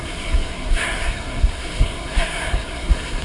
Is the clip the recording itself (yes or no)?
no